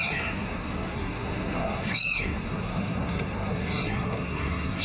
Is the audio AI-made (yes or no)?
yes